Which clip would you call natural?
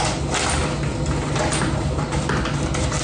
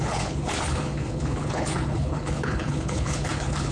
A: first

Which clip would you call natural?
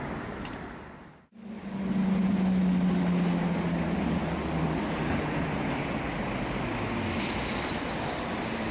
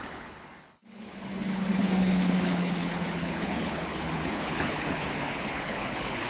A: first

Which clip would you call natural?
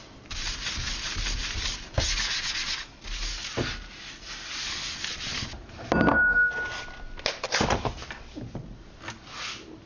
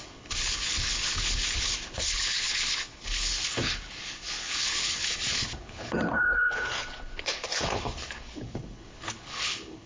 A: first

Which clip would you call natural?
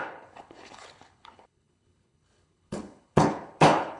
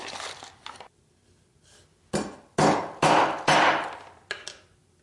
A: second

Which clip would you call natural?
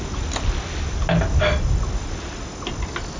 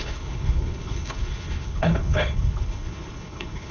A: first